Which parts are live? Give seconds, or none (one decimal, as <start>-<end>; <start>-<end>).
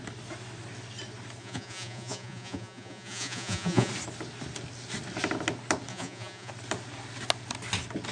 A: 0.0-1.4; 3.9-5.9; 6.5-8.1